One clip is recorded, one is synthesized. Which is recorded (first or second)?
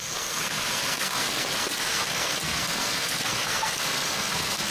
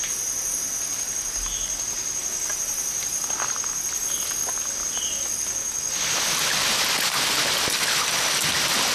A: second